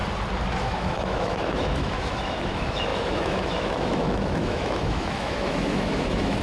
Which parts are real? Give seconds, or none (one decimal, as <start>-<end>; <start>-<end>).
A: 0.0-0.6